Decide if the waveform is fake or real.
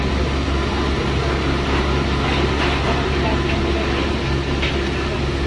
real